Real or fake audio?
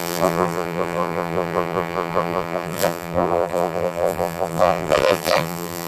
fake